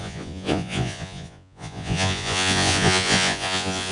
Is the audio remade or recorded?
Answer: remade